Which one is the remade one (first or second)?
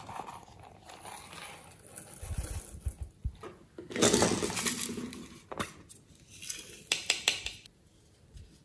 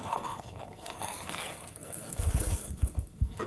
second